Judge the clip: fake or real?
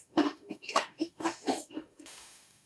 fake